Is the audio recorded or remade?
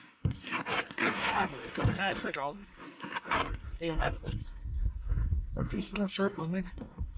remade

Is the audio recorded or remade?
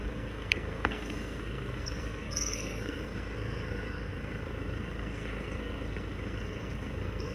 remade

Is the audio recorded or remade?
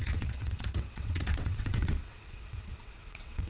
remade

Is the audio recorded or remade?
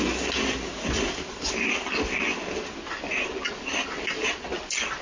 recorded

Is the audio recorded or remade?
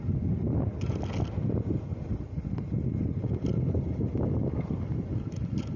recorded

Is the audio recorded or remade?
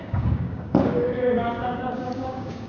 remade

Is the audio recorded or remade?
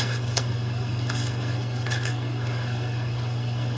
remade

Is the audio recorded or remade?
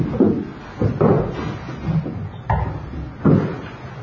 recorded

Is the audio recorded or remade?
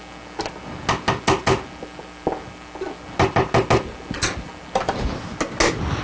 recorded